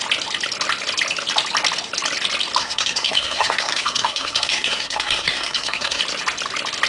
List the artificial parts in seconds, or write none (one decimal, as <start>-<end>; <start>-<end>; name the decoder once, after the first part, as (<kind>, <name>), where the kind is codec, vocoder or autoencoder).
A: 2.6-6.0 (codec, SNAC)